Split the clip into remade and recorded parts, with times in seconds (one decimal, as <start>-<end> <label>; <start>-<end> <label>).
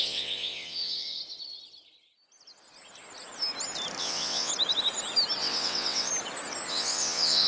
0.0-1.2 remade; 1.2-4.0 recorded; 4.0-4.5 remade; 4.5-5.4 recorded; 5.4-6.1 remade; 6.1-6.7 recorded; 6.7-7.5 remade